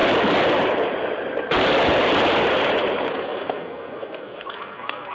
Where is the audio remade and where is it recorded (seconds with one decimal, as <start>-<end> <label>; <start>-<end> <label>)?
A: 0.0-3.1 recorded; 3.1-5.1 remade